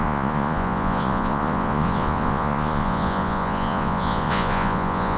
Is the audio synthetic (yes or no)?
yes